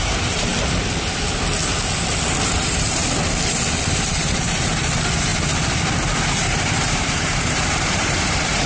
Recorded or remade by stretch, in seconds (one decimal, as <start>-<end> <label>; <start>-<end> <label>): 0.0-0.5 remade; 0.5-2.5 recorded; 2.5-3.0 remade; 3.0-3.9 recorded; 3.9-5.3 remade; 5.3-6.2 recorded; 6.2-8.7 remade